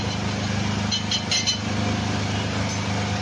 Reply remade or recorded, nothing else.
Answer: recorded